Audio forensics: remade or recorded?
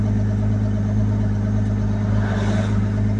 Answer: recorded